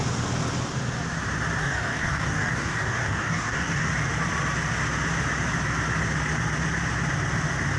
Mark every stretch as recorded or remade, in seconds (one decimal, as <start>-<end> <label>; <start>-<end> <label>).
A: 0.0-1.6 recorded; 1.6-3.9 remade; 3.9-7.8 recorded